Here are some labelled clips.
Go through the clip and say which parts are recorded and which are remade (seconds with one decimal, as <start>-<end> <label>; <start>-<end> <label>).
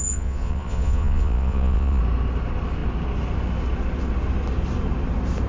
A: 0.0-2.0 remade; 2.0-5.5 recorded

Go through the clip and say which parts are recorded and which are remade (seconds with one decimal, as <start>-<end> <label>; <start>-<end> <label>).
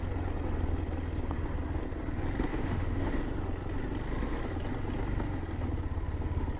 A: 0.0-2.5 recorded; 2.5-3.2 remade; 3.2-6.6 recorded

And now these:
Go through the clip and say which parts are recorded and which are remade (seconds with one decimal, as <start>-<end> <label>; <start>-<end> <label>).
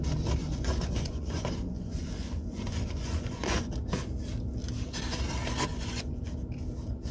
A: 0.0-0.4 recorded; 0.4-3.7 remade; 3.7-5.7 recorded; 5.7-6.3 remade; 6.3-7.1 recorded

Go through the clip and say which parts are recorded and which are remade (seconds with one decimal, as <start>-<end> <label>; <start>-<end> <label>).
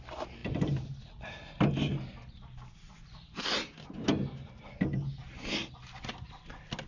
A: 0.0-6.9 recorded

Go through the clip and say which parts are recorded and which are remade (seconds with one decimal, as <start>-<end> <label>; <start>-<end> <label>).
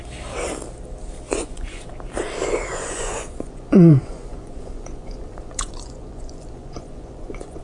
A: 0.0-1.3 recorded; 1.3-1.8 remade; 1.8-2.7 recorded; 2.7-7.6 remade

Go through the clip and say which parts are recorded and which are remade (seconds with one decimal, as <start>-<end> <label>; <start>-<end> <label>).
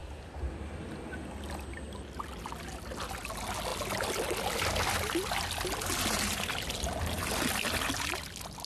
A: 0.0-8.7 recorded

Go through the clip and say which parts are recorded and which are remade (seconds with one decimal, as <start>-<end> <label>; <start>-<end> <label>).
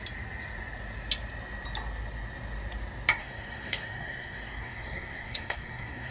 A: 0.0-3.2 recorded; 3.2-6.1 remade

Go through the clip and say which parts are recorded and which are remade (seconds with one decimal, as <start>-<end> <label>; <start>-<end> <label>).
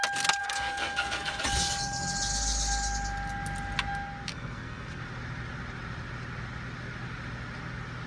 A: 0.0-0.4 recorded; 0.4-1.4 remade; 1.4-4.3 recorded; 4.3-5.0 remade; 5.0-8.1 recorded